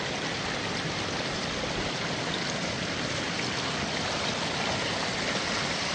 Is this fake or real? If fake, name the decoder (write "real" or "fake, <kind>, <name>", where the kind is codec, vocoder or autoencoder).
real